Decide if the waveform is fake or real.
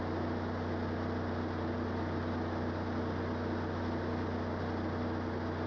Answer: real